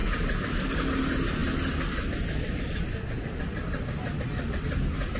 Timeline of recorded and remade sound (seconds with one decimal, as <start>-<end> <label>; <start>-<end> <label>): 0.0-5.2 recorded